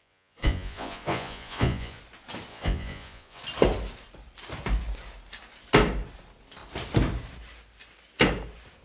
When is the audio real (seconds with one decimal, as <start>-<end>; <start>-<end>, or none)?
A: 2.0-2.5; 3.4-8.8